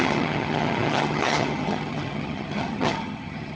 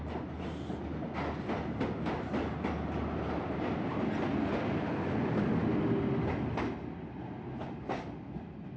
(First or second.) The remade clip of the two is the first